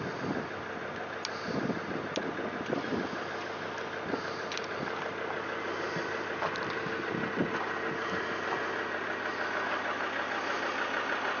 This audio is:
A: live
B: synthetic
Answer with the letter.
A